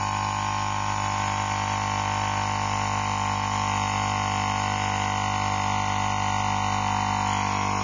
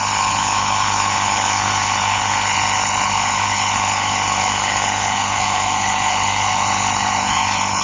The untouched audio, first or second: first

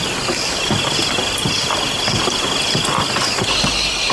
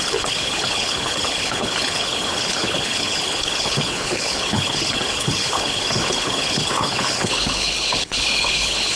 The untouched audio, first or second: first